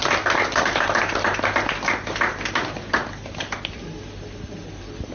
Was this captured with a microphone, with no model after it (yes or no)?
yes